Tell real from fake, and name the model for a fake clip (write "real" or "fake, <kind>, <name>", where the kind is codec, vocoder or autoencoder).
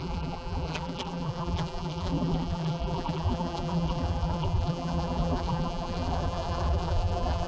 fake, vocoder, BigVGAN v2